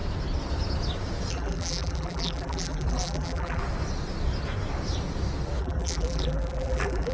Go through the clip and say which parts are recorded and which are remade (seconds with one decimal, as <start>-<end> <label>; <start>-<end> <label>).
0.0-1.3 recorded; 1.3-3.6 remade; 3.6-5.6 recorded; 5.6-7.1 remade